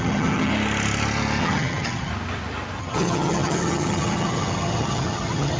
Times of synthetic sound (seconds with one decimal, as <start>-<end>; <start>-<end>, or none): 0.0-0.5; 1.4-2.1; 2.8-5.6